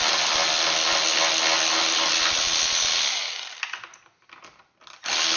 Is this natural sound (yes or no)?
yes